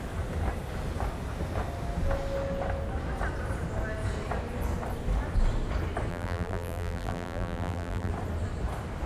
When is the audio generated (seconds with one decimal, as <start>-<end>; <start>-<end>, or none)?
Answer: 6.1-8.1

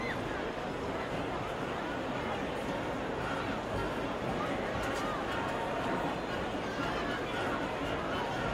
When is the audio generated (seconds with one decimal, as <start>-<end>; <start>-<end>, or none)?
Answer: none

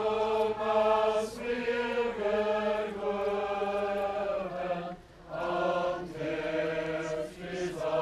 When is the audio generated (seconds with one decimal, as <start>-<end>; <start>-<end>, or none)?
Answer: 4.1-4.9